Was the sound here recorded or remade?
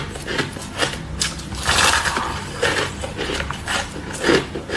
recorded